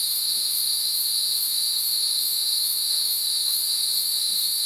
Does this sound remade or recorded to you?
remade